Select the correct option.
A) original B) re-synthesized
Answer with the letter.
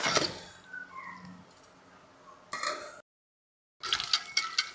A